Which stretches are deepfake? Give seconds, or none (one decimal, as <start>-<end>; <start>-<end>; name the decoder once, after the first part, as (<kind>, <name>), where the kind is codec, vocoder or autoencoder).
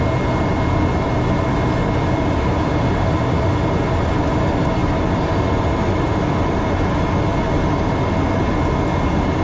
none